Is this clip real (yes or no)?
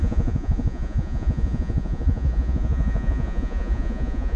no